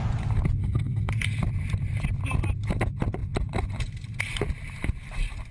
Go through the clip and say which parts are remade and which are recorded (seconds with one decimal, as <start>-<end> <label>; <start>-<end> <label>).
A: 0.0-0.6 recorded; 0.6-1.1 remade; 1.1-5.5 recorded

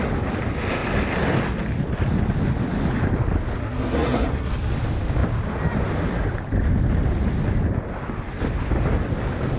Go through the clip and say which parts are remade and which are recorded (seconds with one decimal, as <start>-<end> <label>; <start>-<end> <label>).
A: 0.0-3.6 recorded; 3.6-4.5 remade; 4.5-9.6 recorded